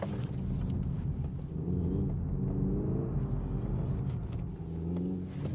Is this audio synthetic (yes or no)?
no